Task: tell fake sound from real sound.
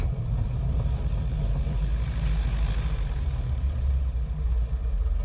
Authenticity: fake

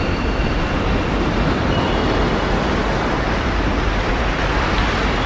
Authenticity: real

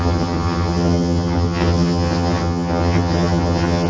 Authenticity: fake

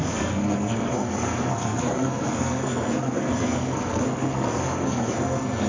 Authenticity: fake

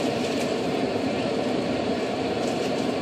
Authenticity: fake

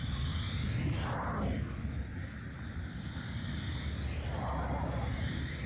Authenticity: real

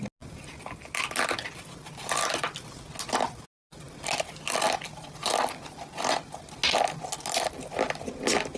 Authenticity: real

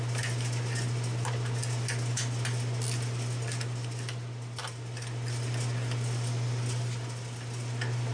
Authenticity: real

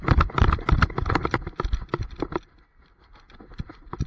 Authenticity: real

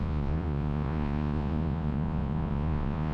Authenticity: fake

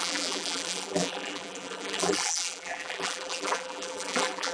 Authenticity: fake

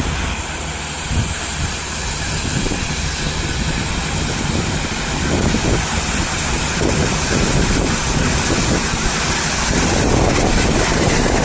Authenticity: real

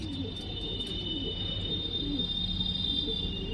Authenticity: real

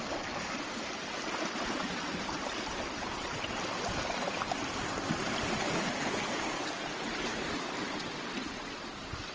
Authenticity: real